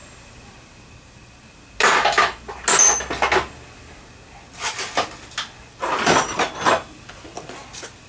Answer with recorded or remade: recorded